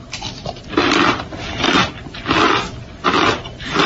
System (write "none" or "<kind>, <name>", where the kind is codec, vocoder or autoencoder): vocoder, BigVGAN v2